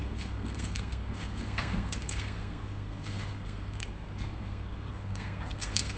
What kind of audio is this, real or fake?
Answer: fake